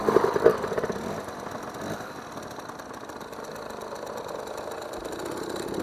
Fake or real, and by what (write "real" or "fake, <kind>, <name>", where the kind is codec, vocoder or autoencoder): real